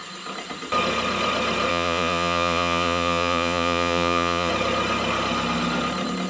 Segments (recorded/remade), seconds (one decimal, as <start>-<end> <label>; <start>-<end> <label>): 0.0-1.7 recorded; 1.7-4.5 remade; 4.5-6.3 recorded